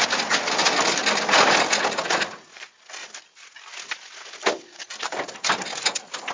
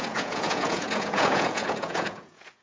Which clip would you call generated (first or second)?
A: second